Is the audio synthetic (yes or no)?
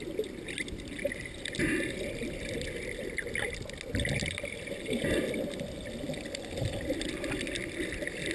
no